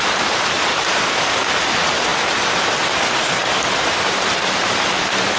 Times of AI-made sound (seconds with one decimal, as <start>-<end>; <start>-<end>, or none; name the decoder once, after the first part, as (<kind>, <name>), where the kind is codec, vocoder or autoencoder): 0.0-5.4 (vocoder, BigVGAN v2)